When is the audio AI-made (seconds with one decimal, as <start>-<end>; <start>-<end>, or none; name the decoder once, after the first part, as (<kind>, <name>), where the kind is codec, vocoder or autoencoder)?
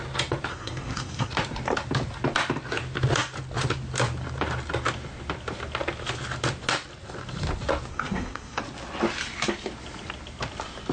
0.5-1.3 (codec, SNAC); 7.9-8.6